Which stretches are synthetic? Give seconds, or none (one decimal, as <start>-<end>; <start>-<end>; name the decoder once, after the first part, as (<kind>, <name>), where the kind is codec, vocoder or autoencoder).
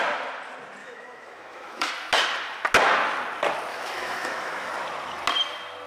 0.8-1.9 (autoencoder, DAC-VAE); 3.7-4.7